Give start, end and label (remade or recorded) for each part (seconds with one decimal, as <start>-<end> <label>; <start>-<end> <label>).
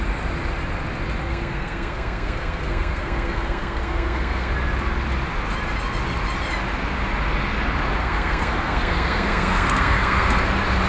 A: 0.0-1.3 recorded; 1.3-4.5 remade; 4.5-8.0 recorded; 8.0-10.4 remade; 10.4-10.9 recorded